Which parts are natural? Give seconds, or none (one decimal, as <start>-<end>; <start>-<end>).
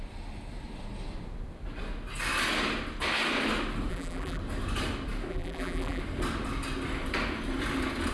0.0-3.9; 4.4-5.3; 6.0-8.1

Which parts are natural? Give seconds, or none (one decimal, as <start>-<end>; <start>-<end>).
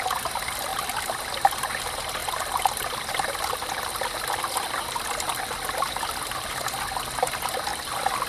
0.0-0.7; 1.2-2.2; 6.8-7.7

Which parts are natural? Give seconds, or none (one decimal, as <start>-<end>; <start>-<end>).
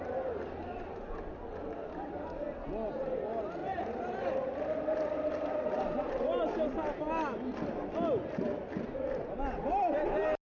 0.0-3.6; 7.0-10.5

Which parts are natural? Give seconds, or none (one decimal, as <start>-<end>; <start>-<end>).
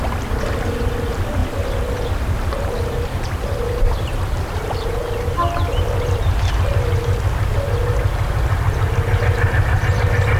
0.0-1.4; 6.0-10.4